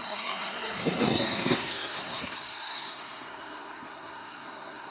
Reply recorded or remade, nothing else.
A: remade